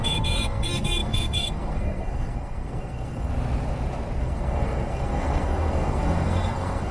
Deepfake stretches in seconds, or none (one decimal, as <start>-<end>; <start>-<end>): 0.0-3.3; 4.2-6.9